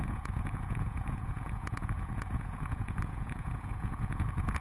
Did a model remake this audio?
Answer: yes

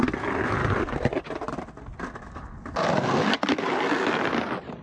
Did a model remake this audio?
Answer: no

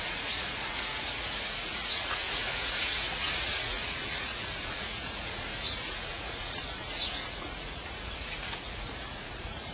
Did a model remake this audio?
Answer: yes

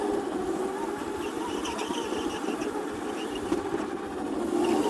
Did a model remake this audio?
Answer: no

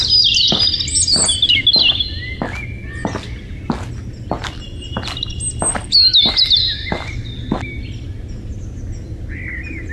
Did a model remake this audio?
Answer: no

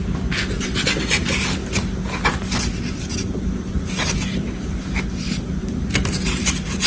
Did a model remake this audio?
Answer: no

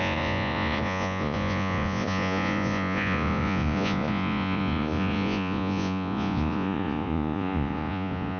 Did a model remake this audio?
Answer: yes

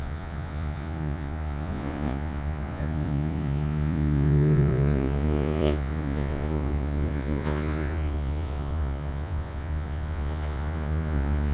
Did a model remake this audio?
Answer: yes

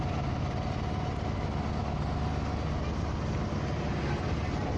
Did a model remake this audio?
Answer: no